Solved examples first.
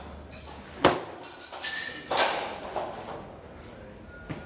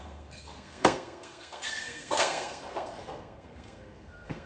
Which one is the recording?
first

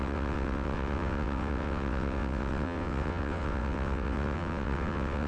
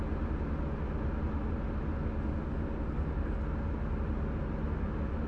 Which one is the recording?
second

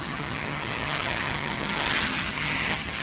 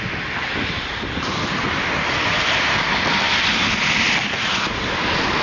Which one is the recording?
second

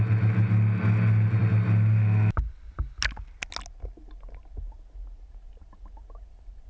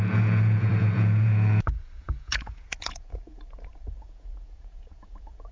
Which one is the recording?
first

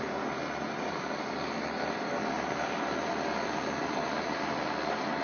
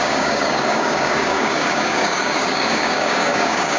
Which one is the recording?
first